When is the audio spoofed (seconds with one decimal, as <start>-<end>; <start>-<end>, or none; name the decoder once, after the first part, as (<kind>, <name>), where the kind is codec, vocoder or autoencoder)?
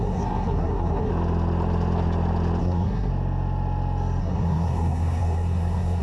0.0-1.1 (codec, SNAC); 2.6-3.1; 4.2-6.0